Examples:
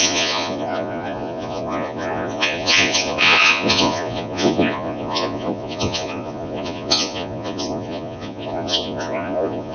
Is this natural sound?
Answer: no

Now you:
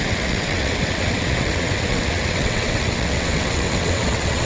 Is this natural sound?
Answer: no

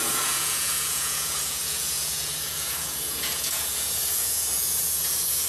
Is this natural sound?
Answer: no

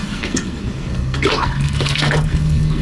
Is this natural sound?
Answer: no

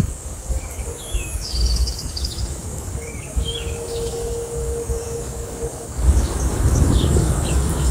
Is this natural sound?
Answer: no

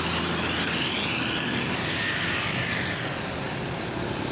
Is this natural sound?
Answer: yes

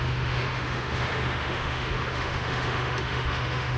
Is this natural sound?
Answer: no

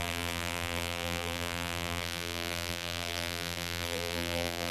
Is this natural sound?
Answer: no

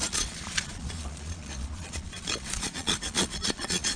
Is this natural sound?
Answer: no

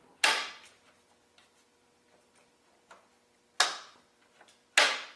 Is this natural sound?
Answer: yes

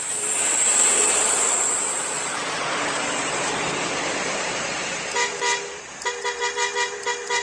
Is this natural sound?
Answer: no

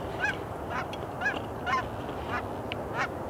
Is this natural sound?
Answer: yes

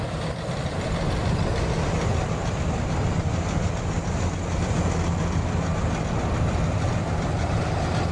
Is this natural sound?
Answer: yes